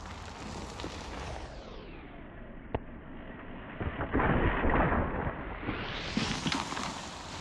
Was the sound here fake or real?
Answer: real